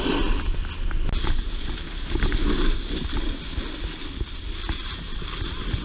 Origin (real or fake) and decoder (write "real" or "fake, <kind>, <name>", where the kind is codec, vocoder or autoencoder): real